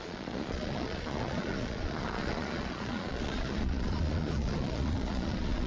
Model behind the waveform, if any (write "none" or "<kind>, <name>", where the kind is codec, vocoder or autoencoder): vocoder, Vocos